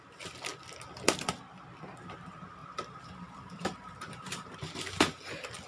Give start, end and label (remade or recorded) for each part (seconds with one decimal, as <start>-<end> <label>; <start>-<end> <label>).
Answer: 0.0-2.6 recorded; 2.6-4.7 remade; 4.7-5.7 recorded